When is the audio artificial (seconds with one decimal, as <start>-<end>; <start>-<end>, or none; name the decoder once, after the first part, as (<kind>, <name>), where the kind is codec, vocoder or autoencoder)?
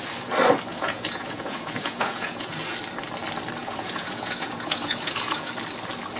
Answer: 0.7-2.6 (vocoder, Vocos); 3.6-5.5